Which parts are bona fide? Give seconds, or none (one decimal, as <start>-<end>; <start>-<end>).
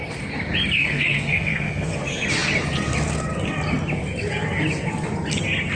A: 0.0-0.8; 2.0-5.7